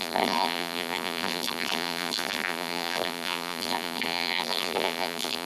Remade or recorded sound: remade